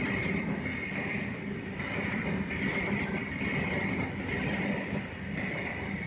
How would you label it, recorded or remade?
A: recorded